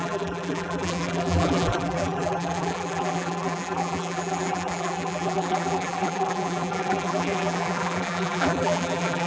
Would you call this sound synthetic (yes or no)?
yes